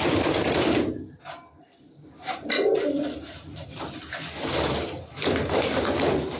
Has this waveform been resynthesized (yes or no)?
no